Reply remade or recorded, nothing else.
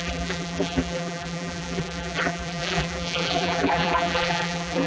remade